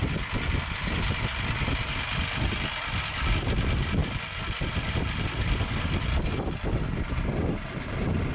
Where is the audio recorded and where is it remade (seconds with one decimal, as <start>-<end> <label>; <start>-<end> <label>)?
0.0-4.0 recorded; 4.0-6.5 remade; 6.5-8.3 recorded